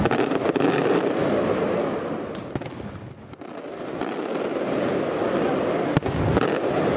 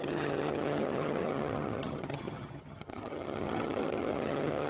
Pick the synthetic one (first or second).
second